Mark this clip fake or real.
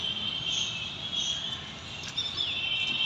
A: real